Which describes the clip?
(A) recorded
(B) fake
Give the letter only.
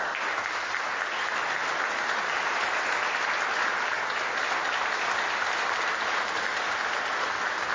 A